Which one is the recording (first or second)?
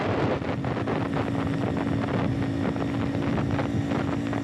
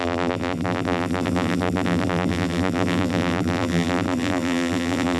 first